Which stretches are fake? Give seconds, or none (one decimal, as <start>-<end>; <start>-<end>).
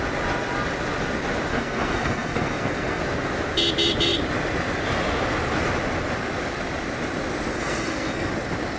1.5-3.0; 7.5-8.3